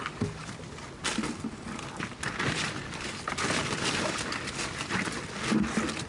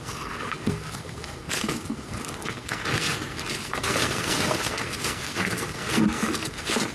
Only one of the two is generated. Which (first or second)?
second